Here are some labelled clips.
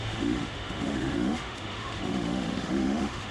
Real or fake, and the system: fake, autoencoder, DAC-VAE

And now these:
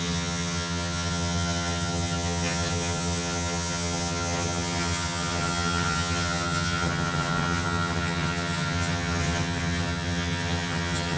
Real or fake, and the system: fake, vocoder, HiFi-GAN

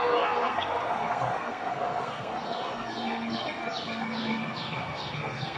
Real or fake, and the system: fake, codec, SNAC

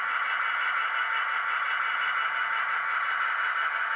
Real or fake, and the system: real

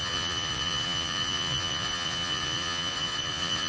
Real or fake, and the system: fake, vocoder, Vocos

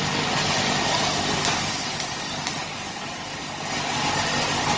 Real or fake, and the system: real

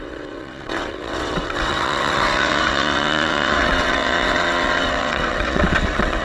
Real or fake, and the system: fake, vocoder, WaveNeXt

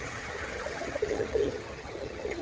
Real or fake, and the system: fake, vocoder, HiFi-GAN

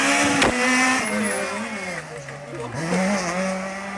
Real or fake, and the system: real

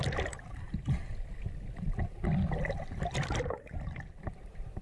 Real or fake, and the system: real